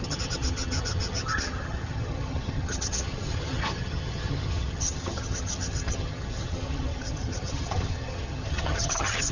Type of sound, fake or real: fake